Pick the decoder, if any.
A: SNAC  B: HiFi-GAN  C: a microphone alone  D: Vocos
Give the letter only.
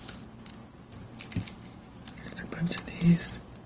C